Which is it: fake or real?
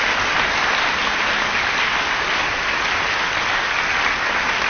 real